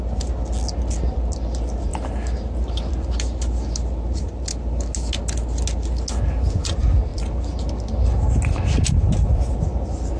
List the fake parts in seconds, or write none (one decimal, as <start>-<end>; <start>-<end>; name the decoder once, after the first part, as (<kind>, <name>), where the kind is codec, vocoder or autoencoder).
none